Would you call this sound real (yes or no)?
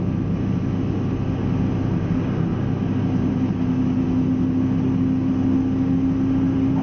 yes